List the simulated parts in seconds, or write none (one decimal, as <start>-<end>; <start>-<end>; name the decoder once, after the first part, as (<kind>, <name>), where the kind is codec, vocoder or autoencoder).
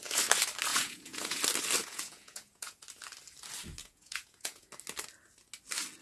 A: 0.7-1.4 (vocoder, Vocos); 1.8-2.8; 3.8-4.7